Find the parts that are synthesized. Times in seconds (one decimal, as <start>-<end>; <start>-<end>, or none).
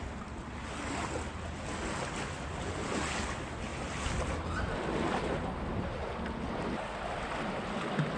none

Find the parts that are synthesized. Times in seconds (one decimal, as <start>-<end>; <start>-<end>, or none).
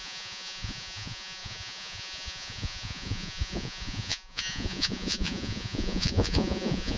0.0-7.0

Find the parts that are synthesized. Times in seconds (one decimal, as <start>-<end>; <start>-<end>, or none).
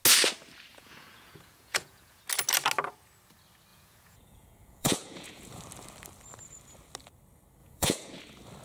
0.7-2.2; 3.7-5.6; 7.6-8.2